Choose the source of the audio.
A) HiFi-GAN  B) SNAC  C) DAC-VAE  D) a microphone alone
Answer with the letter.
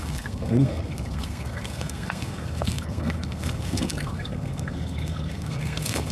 B